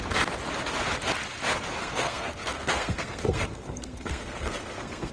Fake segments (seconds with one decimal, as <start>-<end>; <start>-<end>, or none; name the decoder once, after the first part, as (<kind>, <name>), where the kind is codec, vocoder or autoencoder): 1.8-5.1 (codec, SNAC)